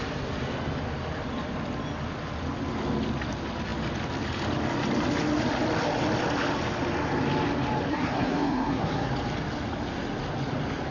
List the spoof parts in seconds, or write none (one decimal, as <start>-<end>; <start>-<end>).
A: 7.9-9.1